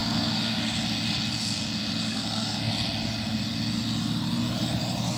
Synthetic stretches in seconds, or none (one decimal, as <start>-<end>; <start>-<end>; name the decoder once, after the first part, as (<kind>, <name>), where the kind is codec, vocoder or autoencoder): 0.0-0.6 (codec, SNAC); 2.1-2.7